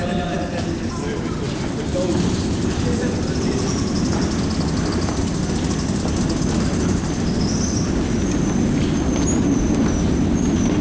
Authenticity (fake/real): real